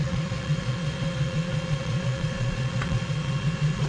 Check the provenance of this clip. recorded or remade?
remade